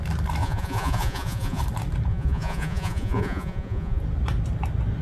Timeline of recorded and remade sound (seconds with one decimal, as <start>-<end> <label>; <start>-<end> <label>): 0.0-0.4 recorded; 0.4-1.6 remade; 1.6-2.1 recorded; 2.1-4.0 remade; 4.0-5.0 recorded